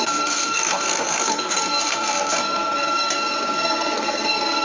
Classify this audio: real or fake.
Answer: fake